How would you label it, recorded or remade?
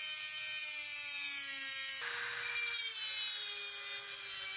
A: recorded